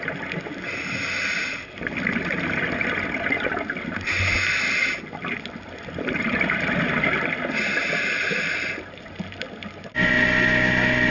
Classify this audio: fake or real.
real